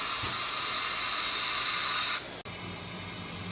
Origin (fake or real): real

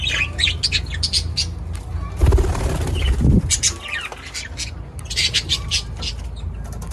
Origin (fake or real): real